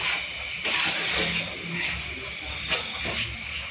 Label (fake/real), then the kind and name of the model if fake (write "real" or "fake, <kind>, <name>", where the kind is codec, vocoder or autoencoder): real